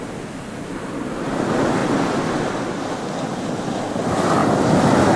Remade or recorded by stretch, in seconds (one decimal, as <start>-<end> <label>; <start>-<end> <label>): 0.0-5.2 recorded